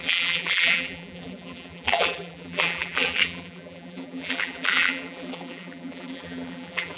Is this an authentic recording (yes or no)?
no